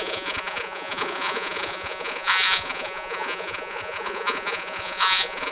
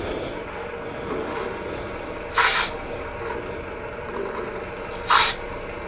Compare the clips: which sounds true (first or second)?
second